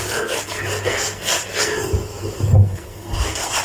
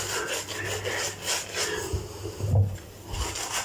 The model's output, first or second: first